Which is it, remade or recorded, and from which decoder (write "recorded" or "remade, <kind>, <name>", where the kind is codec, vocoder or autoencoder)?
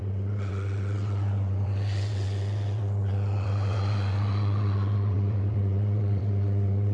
remade, vocoder, WaveNeXt